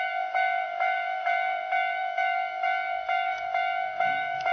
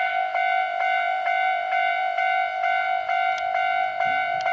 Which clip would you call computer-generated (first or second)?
first